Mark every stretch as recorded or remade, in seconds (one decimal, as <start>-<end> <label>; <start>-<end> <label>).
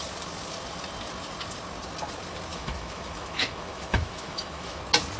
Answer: 0.0-2.5 recorded; 2.5-4.8 remade; 4.8-5.2 recorded